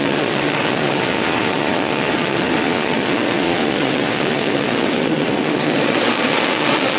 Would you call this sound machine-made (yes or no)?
yes